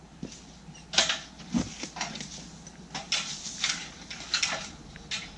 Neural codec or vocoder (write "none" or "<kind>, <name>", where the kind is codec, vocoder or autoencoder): none